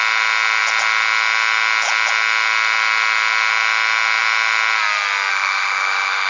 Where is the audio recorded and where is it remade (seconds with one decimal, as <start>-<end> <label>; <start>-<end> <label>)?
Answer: 0.0-5.3 recorded; 5.3-6.3 remade